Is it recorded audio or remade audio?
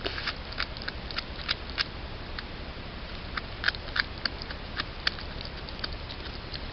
recorded